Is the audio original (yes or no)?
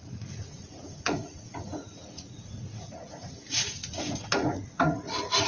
no